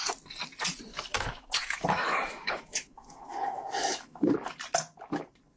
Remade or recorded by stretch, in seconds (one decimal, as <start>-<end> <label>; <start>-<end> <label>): 0.0-0.9 recorded; 0.9-4.3 remade; 4.3-5.6 recorded